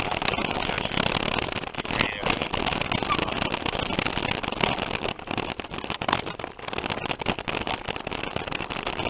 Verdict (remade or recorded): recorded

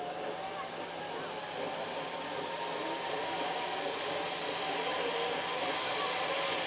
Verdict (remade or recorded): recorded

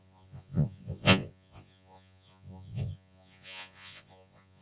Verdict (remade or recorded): remade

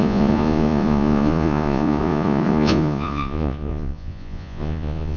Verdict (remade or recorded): remade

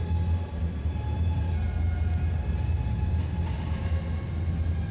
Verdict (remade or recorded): recorded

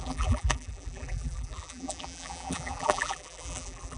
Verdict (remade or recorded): remade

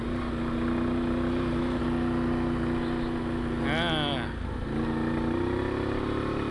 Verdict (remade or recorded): recorded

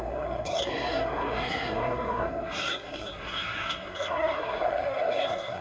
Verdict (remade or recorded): remade